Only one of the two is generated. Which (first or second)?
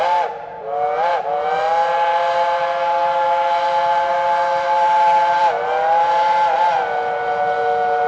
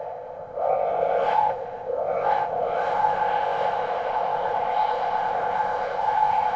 second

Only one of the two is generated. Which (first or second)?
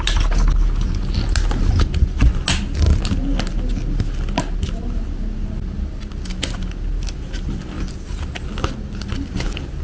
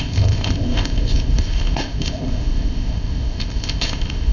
second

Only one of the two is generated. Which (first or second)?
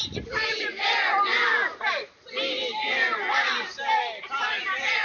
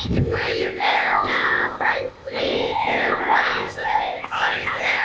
second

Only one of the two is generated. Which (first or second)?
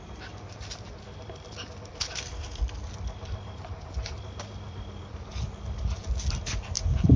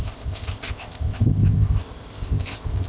second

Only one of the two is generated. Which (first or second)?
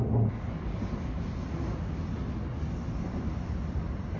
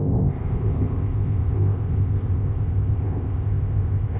second